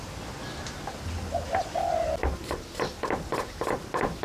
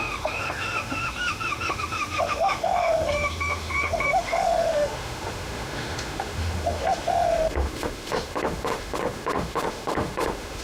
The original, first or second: first